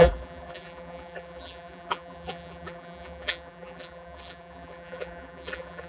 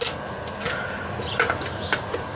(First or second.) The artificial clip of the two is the first